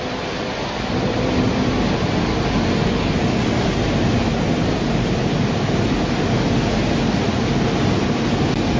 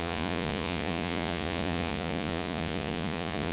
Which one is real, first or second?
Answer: first